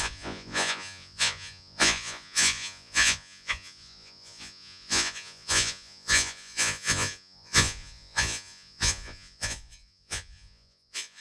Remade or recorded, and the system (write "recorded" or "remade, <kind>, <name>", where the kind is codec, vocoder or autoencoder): remade, vocoder, Vocos